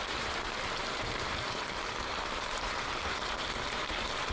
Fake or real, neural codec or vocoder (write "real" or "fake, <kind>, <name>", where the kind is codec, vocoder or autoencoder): fake, vocoder, BigVGAN v2